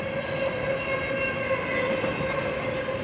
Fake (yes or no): no